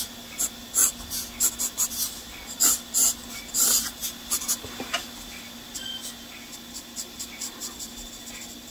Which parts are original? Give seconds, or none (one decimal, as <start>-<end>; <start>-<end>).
0.0-8.7